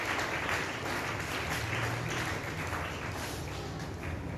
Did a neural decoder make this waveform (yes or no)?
no